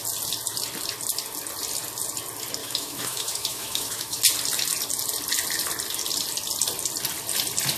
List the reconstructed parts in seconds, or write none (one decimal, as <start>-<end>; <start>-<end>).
2.6-4.2